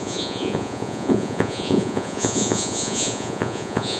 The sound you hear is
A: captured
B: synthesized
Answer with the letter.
B